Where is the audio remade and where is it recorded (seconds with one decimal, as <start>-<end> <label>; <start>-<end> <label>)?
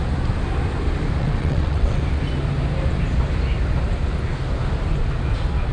0.0-1.2 recorded; 1.2-2.0 remade; 2.0-5.7 recorded